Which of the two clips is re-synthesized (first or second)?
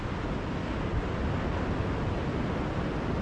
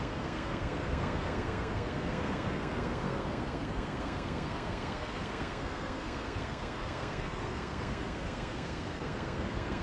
second